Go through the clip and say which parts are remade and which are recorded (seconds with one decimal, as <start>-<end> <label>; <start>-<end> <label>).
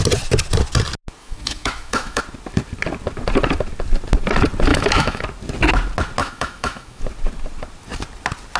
0.0-1.2 recorded; 1.2-2.2 remade; 2.2-4.7 recorded; 4.7-5.2 remade; 5.2-6.2 recorded; 6.2-7.0 remade; 7.0-8.6 recorded